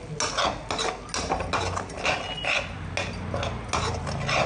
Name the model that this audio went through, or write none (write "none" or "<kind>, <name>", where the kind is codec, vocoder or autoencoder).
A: none